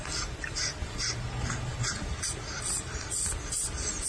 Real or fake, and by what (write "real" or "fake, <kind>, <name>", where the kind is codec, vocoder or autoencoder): real